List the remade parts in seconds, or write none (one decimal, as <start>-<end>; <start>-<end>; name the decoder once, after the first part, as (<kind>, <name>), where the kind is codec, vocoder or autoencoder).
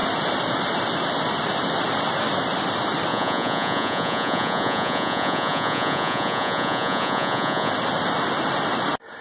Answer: 3.1-7.7 (vocoder, Vocos)